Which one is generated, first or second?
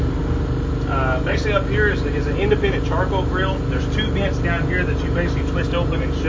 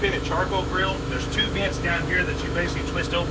second